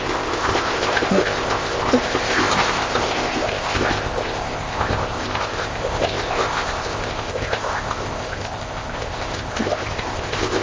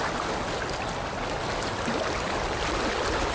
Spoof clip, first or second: first